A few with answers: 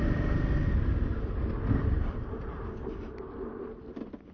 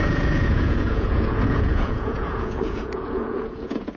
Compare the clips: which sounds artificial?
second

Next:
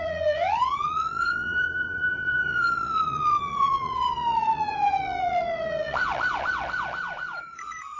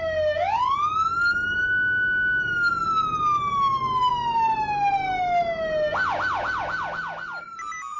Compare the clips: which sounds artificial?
first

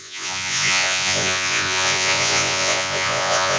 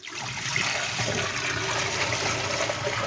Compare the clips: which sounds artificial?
first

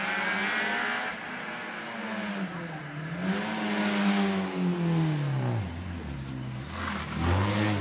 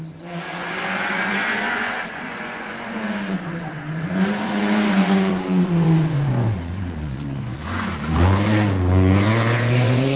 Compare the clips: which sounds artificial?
second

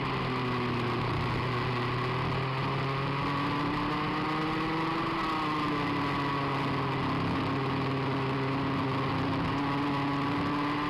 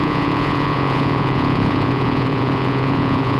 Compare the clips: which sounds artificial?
second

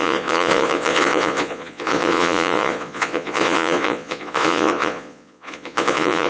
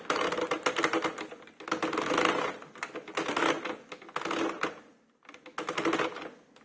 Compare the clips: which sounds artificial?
first